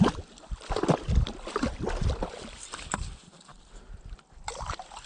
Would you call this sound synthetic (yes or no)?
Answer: no